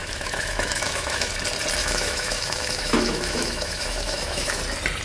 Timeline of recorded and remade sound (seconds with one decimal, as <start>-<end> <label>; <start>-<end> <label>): 0.0-1.3 remade; 1.3-1.8 recorded; 1.8-4.6 remade; 4.6-5.0 recorded